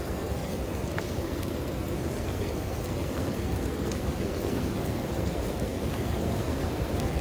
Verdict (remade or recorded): remade